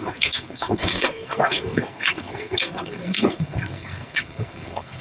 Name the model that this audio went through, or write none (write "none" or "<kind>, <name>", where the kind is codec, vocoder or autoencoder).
codec, SNAC